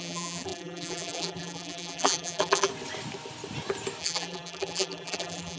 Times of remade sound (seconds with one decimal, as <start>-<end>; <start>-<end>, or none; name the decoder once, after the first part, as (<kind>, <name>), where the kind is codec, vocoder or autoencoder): 0.0-2.7 (vocoder, BigVGAN v2); 4.0-5.6